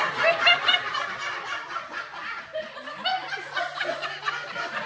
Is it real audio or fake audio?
real